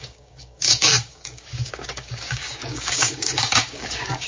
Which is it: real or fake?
fake